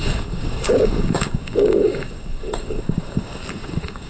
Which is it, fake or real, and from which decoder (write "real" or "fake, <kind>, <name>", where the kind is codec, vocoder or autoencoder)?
fake, codec, DAC